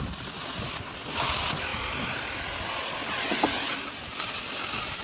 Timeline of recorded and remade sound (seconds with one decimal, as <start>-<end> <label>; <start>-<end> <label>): 0.0-5.0 recorded